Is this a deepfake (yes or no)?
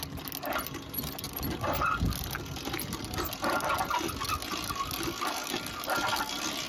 no